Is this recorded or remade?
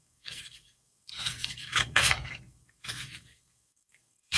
remade